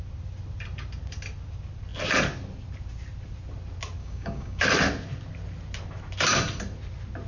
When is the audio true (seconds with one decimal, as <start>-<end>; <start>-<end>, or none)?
0.0-4.0; 4.6-7.3